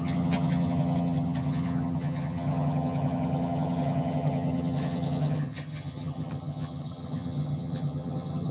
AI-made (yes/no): yes